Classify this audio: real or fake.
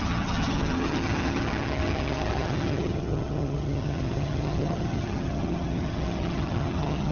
fake